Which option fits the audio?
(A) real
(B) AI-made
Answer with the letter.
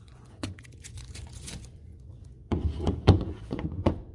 B